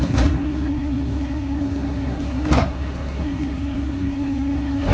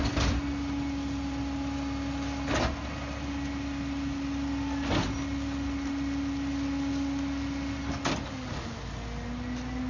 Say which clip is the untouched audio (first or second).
second